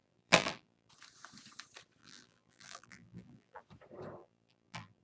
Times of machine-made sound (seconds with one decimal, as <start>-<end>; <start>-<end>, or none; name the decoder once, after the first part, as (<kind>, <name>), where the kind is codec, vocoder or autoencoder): 0.0-0.9 (vocoder, BigVGAN v2); 2.0-3.6; 4.2-5.0